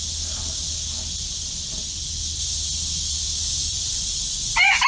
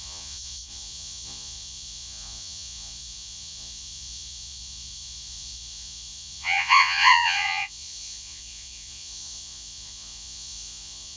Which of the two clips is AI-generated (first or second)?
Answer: second